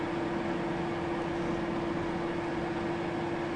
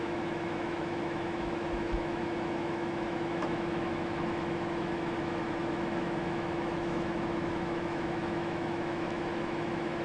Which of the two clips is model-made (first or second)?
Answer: second